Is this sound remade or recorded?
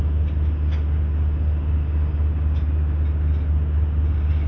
recorded